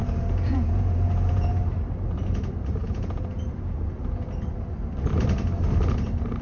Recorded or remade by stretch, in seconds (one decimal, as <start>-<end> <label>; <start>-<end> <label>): 0.0-1.5 remade; 1.5-2.8 recorded; 2.8-3.4 remade; 3.4-6.4 recorded